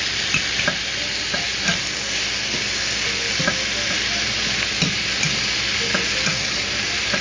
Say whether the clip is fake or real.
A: real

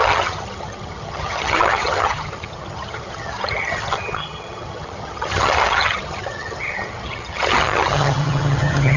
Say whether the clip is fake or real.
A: fake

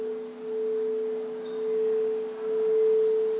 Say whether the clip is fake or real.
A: real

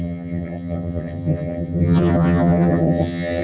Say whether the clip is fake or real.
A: fake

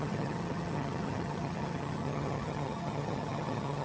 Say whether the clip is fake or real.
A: fake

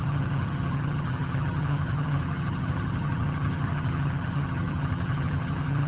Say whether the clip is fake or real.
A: fake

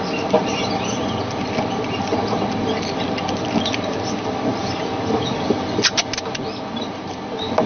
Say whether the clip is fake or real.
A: real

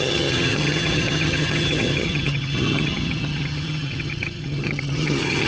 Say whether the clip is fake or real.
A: fake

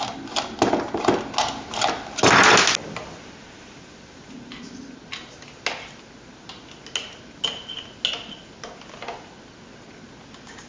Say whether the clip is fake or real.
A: real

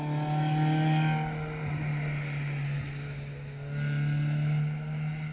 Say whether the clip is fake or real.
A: real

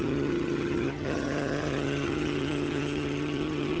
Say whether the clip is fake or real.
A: fake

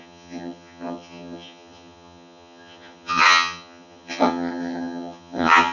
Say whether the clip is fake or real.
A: fake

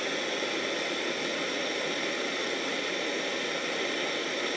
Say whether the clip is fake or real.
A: real